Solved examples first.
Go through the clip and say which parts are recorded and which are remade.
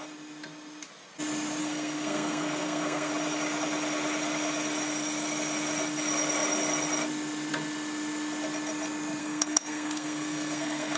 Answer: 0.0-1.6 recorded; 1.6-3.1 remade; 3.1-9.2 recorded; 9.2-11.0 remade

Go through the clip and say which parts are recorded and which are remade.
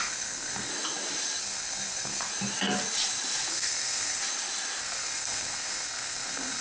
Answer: 0.0-0.7 remade; 0.7-1.4 recorded; 1.4-2.3 remade; 2.3-3.5 recorded; 3.5-4.2 remade; 4.2-4.8 recorded; 4.8-6.6 remade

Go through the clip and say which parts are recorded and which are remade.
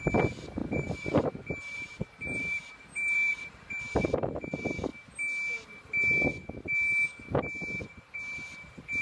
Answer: 0.0-4.9 remade; 4.9-8.1 recorded; 8.1-9.0 remade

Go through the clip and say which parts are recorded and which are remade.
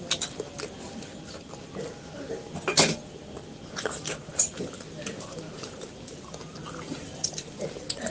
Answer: 0.0-8.1 recorded